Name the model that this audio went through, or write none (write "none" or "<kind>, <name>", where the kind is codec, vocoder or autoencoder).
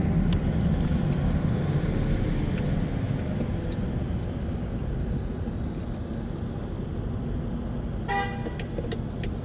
none